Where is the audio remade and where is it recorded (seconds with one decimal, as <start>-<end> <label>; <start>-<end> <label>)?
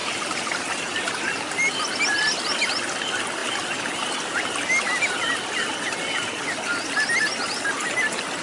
0.0-8.4 recorded